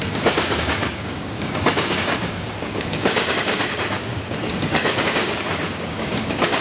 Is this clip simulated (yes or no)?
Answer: yes